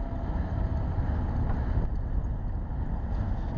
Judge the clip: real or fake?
real